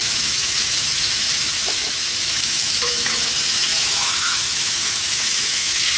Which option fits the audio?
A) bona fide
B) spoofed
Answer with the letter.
B